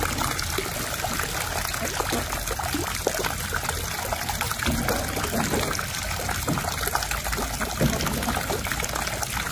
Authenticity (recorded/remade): recorded